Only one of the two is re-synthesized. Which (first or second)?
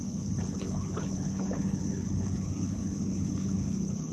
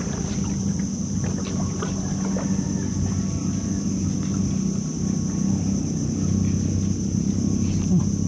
first